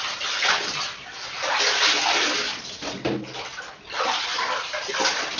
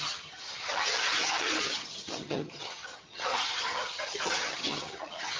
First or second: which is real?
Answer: first